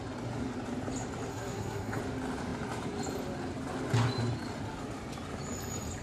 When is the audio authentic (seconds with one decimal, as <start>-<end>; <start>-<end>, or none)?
0.0-1.3; 2.0-6.0